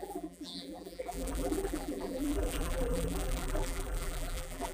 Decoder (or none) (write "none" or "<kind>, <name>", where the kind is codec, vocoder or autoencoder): vocoder, BigVGAN v2